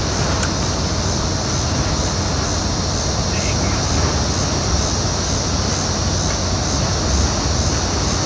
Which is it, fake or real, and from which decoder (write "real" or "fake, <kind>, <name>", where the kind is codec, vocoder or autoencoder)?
real